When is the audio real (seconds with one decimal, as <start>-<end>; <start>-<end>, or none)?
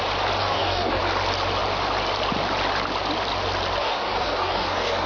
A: 0.0-0.4; 1.0-3.8